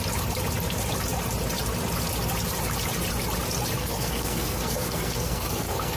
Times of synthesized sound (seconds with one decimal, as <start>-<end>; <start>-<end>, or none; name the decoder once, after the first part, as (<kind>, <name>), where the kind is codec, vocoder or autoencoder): 3.8-6.0 (codec, SNAC)